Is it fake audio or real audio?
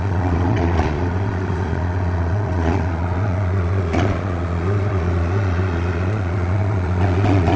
fake